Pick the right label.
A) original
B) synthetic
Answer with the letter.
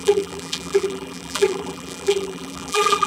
B